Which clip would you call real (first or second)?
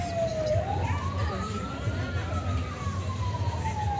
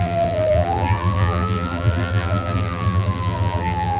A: first